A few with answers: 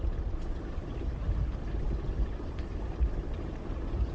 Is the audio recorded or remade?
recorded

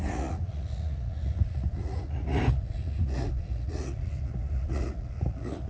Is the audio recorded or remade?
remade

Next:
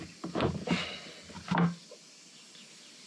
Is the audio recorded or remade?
recorded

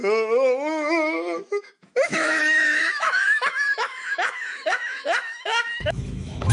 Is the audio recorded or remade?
remade